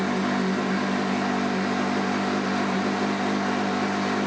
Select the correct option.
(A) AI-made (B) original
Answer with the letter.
B